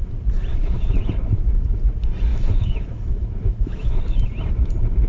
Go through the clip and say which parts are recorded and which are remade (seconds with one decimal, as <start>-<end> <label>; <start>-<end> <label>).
0.0-0.5 recorded; 0.5-1.1 remade; 1.1-2.3 recorded; 2.3-4.0 remade; 4.0-5.1 recorded